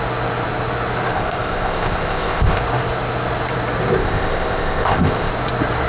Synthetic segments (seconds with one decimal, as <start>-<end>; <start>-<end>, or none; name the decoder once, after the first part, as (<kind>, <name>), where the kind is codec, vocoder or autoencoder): 1.1-2.6 (codec, ZipCodec); 4.0-5.3